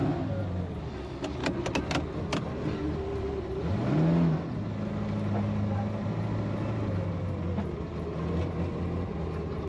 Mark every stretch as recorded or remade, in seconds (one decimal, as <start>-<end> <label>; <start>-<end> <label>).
0.0-9.7 recorded